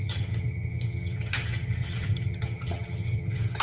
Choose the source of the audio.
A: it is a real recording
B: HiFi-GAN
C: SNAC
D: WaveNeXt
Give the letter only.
B